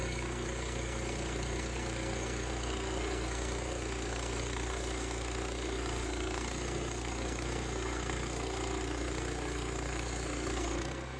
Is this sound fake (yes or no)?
yes